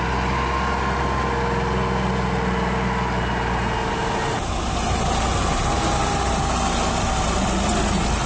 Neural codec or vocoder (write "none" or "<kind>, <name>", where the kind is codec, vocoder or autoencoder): none